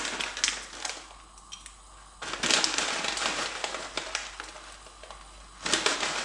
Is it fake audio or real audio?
real